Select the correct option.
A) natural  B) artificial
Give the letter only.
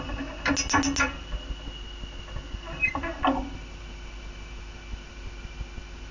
A